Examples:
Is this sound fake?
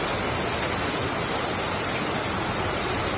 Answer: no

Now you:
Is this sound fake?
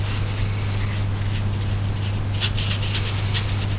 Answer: no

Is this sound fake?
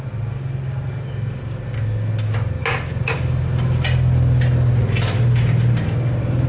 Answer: no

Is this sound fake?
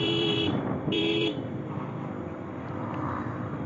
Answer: yes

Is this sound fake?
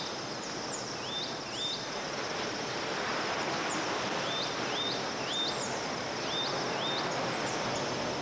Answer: no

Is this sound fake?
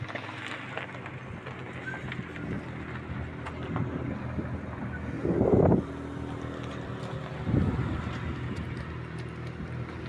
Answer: no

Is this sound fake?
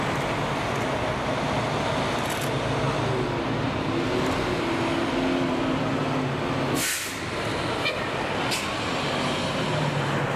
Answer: no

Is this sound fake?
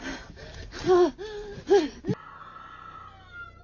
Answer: no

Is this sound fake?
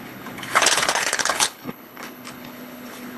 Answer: yes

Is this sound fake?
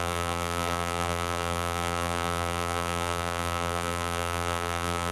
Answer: yes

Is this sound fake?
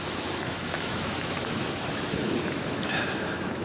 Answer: yes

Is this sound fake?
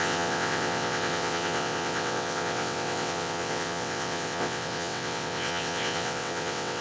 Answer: yes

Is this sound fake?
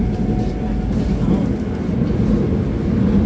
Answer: no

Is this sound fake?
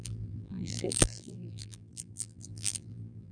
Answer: yes